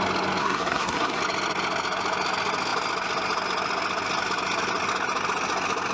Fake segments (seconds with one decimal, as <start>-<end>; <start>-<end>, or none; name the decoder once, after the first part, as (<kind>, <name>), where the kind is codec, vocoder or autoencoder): 0.4-1.2 (codec, SNAC)